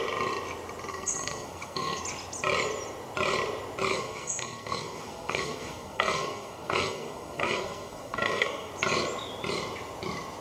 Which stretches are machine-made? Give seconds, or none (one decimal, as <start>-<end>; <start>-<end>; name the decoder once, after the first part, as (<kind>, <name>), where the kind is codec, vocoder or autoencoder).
0.9-2.0 (codec, SNAC); 3.9-8.7

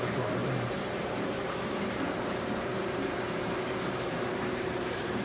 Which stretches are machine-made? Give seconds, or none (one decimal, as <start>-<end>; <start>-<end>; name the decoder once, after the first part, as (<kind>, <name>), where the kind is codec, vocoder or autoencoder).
0.0-5.2 (vocoder, BigVGAN v2)